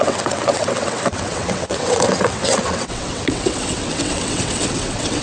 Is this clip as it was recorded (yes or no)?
no